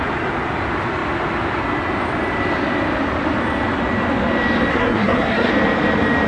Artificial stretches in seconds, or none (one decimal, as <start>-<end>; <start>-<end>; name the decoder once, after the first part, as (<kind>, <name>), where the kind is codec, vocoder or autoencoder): 4.7-5.5 (codec, SNAC)